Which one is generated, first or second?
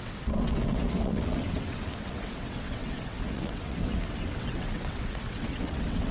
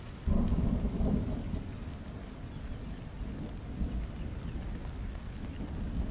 first